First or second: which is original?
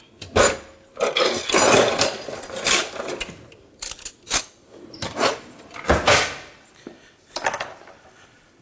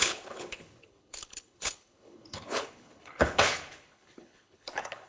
first